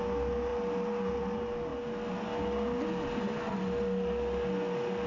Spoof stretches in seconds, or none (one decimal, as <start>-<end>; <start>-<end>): none